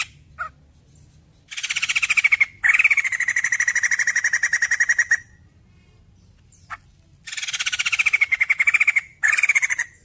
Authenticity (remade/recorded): recorded